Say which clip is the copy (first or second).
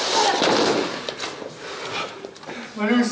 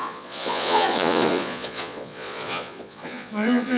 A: second